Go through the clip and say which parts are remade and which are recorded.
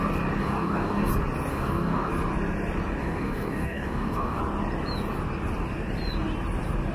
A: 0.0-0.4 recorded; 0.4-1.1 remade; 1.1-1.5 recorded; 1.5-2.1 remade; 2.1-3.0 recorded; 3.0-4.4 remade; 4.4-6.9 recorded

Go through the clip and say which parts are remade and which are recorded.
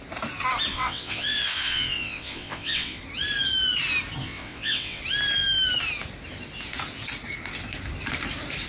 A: 0.0-0.7 recorded; 0.7-3.0 remade; 3.0-4.2 recorded; 4.2-5.0 remade; 5.0-8.7 recorded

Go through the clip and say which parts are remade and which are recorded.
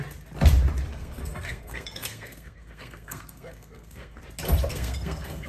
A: 0.0-0.9 recorded; 0.9-4.2 remade; 4.2-4.7 recorded; 4.7-5.5 remade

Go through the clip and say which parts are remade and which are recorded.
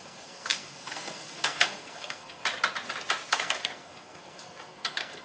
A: 0.0-2.4 remade; 2.4-3.3 recorded; 3.3-5.2 remade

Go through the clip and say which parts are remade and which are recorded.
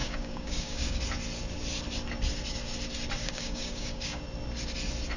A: 0.0-1.0 remade; 1.0-3.2 recorded; 3.2-4.2 remade; 4.2-5.2 recorded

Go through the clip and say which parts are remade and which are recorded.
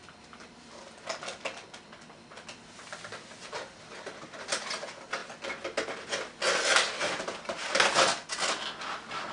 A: 0.0-9.3 recorded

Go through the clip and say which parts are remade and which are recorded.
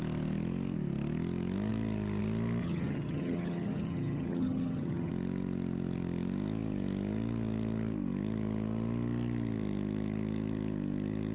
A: 0.0-2.6 recorded; 2.6-5.1 remade; 5.1-11.3 recorded